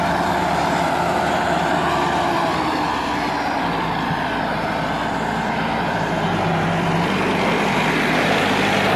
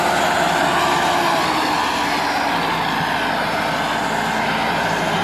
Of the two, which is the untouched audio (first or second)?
second